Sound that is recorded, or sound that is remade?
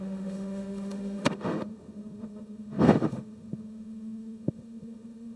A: remade